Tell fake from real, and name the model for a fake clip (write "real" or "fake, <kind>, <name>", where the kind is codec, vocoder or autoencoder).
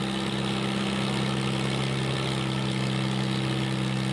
real